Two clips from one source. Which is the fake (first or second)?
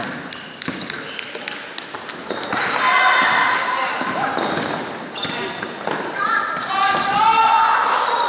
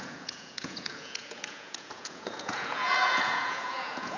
second